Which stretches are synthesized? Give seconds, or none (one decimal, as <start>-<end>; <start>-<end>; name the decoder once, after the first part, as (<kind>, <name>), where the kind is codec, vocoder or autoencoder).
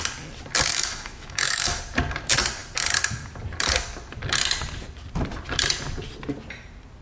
0.7-1.8 (autoencoder, DAC-VAE)